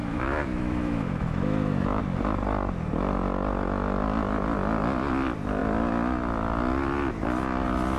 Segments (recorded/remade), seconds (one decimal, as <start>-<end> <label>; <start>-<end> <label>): 0.0-2.0 remade; 2.0-8.0 recorded